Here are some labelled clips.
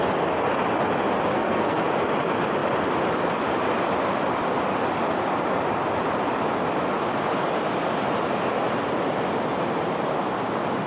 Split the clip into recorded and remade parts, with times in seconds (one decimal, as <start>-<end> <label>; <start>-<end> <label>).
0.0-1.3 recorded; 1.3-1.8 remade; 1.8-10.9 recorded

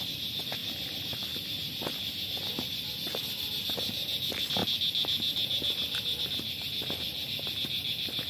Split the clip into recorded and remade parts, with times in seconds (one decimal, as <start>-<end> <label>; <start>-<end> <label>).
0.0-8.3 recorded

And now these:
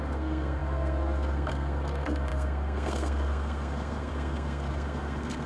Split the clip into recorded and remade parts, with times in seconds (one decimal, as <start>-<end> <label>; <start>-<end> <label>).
0.0-5.5 remade